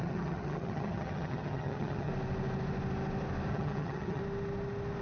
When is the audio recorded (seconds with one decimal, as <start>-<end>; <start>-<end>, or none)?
2.1-3.5; 4.2-5.0